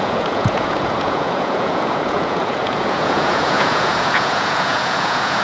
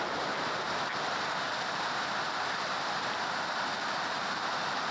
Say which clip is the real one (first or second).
second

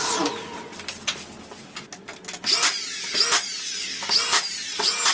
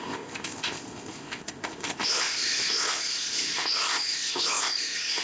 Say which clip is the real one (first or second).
first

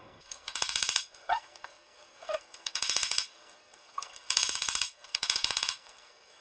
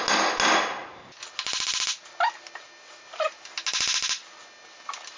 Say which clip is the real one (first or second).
second